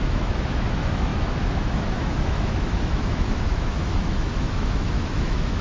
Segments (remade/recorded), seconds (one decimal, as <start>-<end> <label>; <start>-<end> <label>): 0.0-5.6 remade